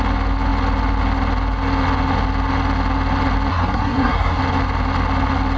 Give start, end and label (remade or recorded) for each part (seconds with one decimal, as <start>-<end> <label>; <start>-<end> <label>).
0.0-3.5 recorded; 3.5-4.4 remade; 4.4-5.6 recorded